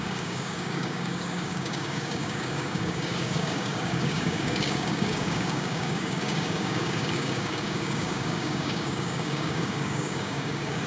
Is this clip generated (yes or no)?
yes